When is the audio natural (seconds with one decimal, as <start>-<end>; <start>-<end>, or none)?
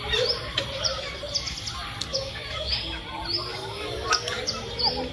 0.0-2.1; 3.0-3.5; 4.4-5.1